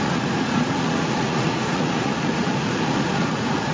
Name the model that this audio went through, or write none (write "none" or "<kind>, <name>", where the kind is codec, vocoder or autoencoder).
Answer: vocoder, Vocos